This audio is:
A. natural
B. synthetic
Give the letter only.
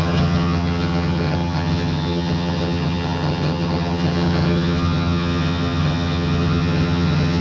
B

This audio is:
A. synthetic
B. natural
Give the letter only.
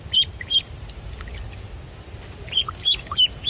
B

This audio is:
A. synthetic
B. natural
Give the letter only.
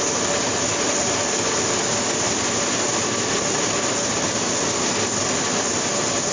B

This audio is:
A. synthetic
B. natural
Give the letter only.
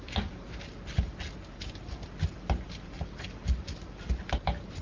B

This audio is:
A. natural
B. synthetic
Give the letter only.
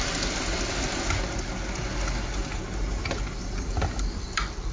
A